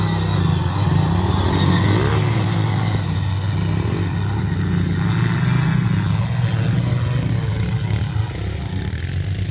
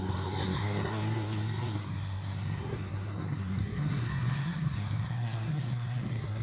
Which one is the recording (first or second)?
first